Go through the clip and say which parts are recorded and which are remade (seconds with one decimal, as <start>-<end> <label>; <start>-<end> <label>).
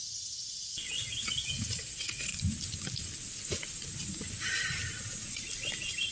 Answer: 0.0-0.5 recorded; 0.5-2.3 remade; 2.3-6.1 recorded